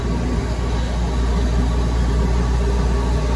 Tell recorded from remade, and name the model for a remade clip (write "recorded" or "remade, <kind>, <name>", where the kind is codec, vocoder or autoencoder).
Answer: recorded